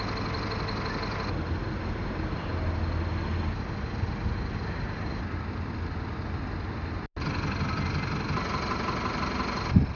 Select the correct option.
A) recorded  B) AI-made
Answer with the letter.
A